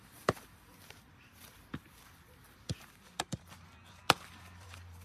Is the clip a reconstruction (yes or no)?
yes